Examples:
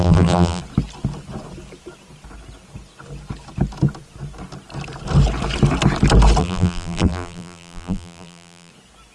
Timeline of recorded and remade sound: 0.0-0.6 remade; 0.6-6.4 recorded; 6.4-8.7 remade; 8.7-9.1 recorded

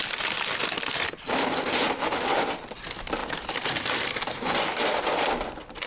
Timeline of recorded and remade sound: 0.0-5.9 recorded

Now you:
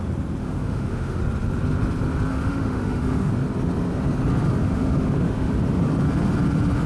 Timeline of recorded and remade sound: 0.0-0.4 recorded; 0.4-1.2 remade; 1.2-2.3 recorded; 2.3-3.3 remade; 3.3-4.6 recorded; 4.6-5.5 remade; 5.5-6.9 recorded